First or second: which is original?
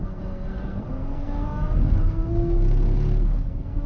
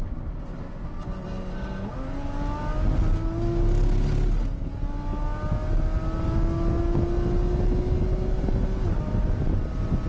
second